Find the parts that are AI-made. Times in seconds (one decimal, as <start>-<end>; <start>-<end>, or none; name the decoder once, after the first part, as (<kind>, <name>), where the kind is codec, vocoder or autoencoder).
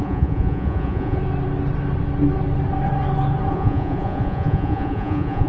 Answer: 0.0-1.2 (vocoder, Vocos); 3.5-5.5